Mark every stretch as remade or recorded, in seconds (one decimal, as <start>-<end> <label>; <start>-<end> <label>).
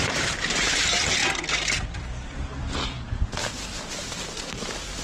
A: 0.0-1.2 remade; 1.2-4.2 recorded; 4.2-5.0 remade